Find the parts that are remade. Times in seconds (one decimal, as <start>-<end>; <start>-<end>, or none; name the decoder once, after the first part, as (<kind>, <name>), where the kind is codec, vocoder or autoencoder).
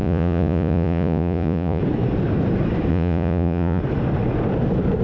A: 0.0-1.8 (vocoder, Vocos); 2.9-3.8